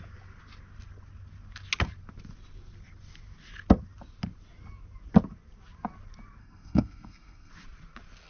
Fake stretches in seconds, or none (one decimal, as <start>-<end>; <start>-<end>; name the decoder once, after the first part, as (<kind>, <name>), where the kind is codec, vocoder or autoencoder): 6.4-7.5 (codec, SNAC)